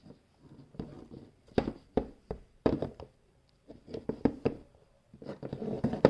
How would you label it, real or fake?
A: fake